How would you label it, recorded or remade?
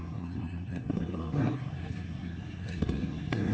remade